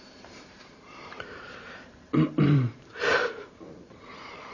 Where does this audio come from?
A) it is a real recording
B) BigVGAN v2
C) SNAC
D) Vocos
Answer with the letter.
B